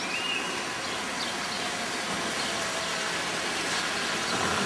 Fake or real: real